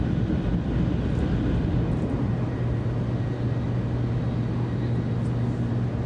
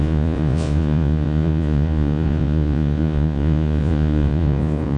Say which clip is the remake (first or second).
second